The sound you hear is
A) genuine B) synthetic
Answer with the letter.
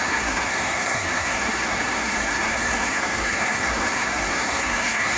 B